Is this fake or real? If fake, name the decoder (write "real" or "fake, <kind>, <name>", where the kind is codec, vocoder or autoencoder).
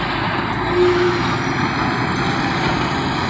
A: real